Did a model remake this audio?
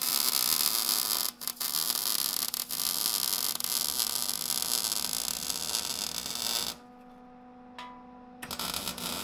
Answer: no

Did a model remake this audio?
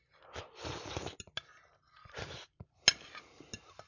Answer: no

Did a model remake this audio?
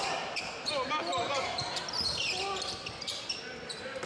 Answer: yes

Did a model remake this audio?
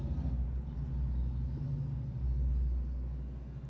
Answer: no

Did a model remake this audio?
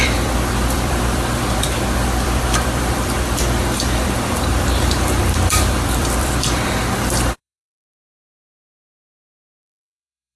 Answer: yes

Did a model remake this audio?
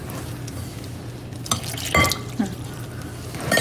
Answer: no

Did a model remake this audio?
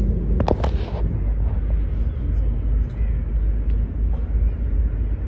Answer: no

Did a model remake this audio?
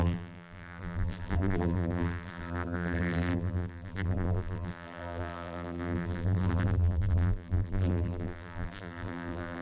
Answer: yes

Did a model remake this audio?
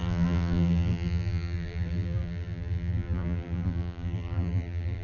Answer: yes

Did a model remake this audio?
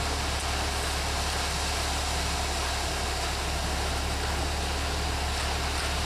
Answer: no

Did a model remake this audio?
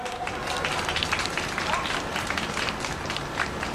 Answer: yes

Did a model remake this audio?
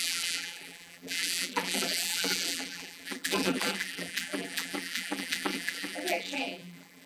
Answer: yes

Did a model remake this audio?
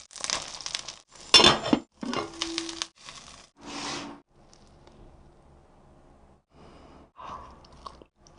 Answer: no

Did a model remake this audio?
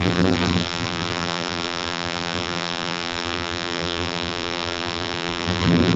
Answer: yes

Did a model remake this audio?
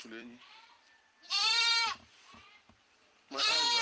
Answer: yes